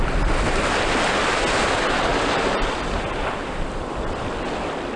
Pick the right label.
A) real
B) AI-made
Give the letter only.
A